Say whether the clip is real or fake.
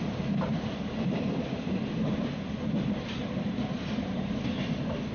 real